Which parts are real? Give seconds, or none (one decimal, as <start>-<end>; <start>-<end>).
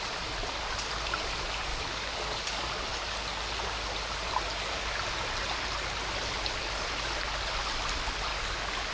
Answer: 0.0-1.7; 3.2-8.3